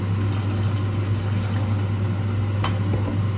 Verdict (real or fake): real